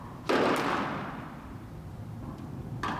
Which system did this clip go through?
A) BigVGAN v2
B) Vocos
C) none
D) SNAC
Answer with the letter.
C